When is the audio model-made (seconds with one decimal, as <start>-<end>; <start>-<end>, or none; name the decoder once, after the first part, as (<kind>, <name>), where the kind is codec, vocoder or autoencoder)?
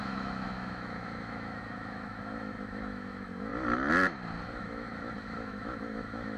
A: 0.0-3.5 (autoencoder, DAC-VAE); 4.4-6.4